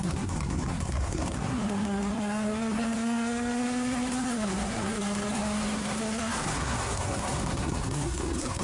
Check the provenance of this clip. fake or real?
fake